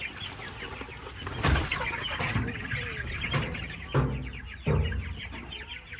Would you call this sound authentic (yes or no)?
yes